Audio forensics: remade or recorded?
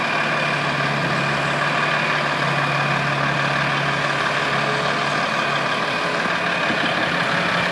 recorded